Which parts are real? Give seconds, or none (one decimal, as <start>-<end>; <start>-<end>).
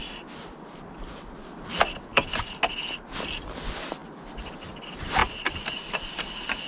0.0-6.7